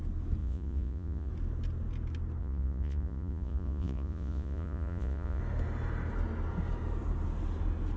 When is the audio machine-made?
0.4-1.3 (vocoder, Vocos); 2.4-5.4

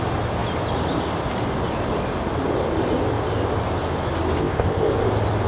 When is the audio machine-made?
4.4-4.9 (codec, ZipCodec)